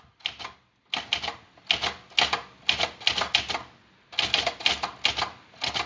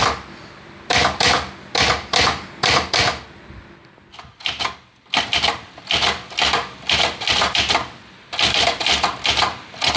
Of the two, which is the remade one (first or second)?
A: second